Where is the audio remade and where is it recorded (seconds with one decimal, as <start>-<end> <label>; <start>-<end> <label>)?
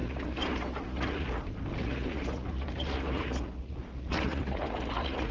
0.0-1.4 remade; 1.4-1.8 recorded; 1.8-5.3 remade